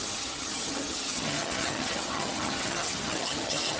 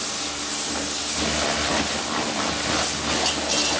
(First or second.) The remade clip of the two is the first